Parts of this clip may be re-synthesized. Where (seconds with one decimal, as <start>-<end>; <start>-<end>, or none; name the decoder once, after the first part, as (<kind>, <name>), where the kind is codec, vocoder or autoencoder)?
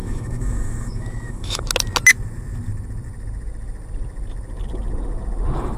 0.0-1.6 (autoencoder, DAC-VAE)